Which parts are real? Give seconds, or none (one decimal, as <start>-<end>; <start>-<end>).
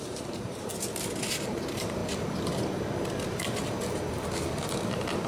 0.7-1.4; 2.0-4.7